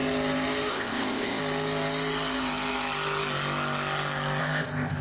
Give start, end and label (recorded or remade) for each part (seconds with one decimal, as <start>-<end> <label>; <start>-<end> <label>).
0.0-0.7 recorded; 0.7-1.4 remade; 1.4-4.4 recorded; 4.4-5.0 remade